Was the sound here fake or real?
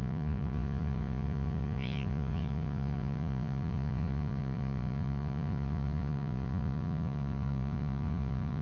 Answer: fake